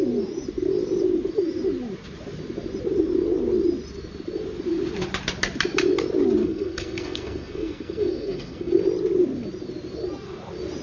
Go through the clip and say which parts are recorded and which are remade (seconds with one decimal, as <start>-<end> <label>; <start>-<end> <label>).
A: 0.0-6.4 recorded; 6.4-8.7 remade; 8.7-10.8 recorded